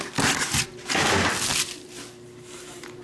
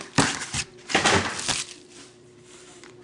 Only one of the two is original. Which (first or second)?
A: first